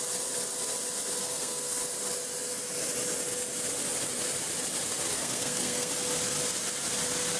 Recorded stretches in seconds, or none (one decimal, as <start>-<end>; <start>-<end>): 0.0-1.2; 1.8-5.1; 5.9-7.4